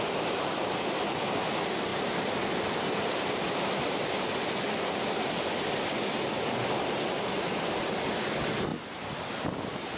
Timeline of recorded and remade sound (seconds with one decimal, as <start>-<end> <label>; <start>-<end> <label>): 0.0-1.9 recorded; 1.9-6.3 remade; 6.3-8.7 recorded; 8.7-9.3 remade; 9.3-10.0 recorded